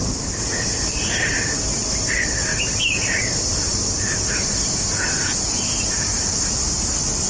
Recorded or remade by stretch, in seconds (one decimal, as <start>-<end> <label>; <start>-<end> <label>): 0.0-7.3 recorded